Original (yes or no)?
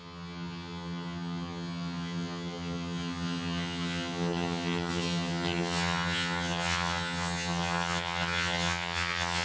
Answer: no